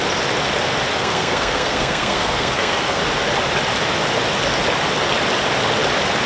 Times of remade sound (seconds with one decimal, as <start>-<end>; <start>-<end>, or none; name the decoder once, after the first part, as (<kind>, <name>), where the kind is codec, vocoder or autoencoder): 0.9-3.0 (codec, SNAC)